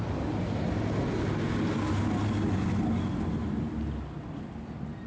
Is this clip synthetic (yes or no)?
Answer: no